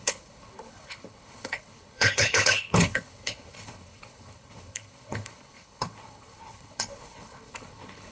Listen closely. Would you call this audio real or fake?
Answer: fake